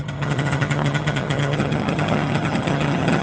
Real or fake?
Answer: fake